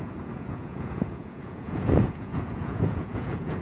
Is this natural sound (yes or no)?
no